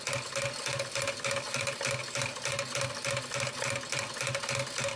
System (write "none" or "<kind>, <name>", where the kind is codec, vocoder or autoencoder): none